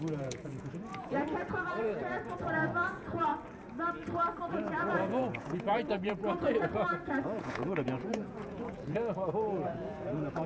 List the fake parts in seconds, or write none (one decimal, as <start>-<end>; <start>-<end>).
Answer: 0.0-3.3; 4.5-10.5